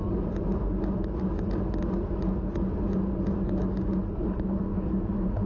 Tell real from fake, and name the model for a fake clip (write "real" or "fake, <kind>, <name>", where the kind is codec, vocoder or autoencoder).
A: real